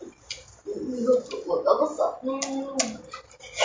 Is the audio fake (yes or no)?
no